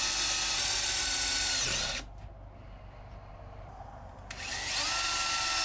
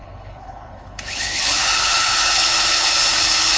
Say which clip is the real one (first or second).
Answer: first